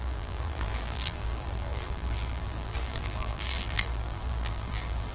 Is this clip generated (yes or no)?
yes